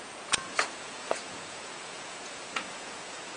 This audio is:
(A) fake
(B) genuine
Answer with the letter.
A